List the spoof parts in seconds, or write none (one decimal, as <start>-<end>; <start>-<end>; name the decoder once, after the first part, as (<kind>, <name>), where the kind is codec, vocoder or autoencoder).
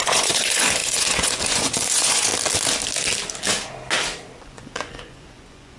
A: 0.0-2.3 (vocoder, Vocos); 4.4-5.8